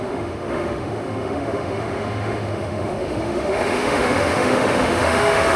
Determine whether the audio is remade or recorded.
remade